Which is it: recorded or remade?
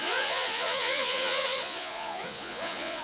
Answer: remade